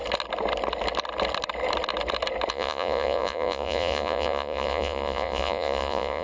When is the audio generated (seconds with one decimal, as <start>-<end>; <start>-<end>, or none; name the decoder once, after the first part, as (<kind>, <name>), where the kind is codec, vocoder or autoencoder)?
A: 2.5-6.2 (vocoder, Vocos)